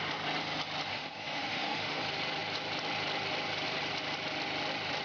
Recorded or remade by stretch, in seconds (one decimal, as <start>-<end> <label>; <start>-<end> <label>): 0.0-0.9 recorded; 0.9-2.0 remade; 2.0-5.0 recorded